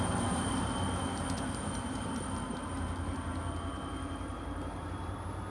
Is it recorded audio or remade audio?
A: remade